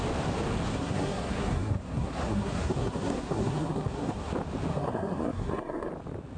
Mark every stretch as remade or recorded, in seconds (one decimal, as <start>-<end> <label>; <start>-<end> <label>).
0.0-0.7 recorded; 0.7-4.3 remade; 4.3-4.7 recorded; 4.7-5.9 remade; 5.9-6.4 recorded